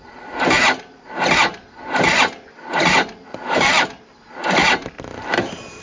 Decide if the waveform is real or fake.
real